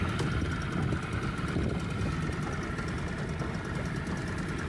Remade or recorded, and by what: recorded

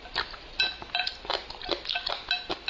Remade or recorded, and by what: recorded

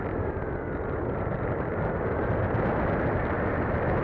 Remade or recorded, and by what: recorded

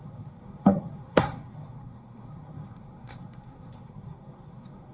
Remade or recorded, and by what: remade, codec, SNAC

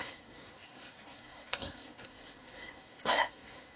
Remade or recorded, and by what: remade, codec, SNAC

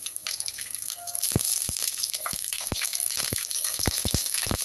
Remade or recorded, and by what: remade, codec, SNAC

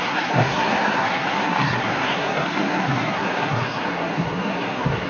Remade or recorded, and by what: remade, codec, SNAC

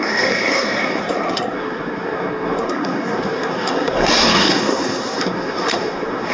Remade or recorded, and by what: remade, codec, SNAC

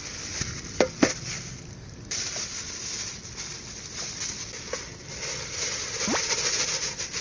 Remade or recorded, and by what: recorded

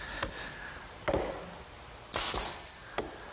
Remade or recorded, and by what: recorded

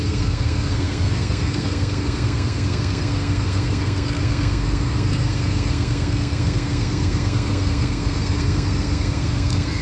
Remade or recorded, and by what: remade, codec, SNAC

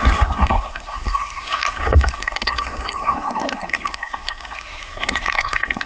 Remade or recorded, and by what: remade, codec, SNAC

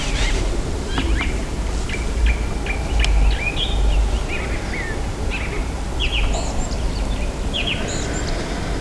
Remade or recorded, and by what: recorded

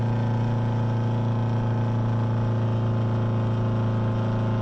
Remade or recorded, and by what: recorded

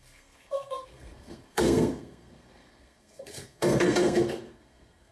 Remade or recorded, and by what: remade, codec, SNAC